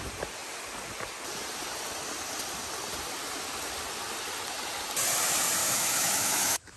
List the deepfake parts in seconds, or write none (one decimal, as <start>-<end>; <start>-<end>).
5.6-6.8